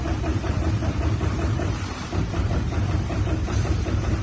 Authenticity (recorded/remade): remade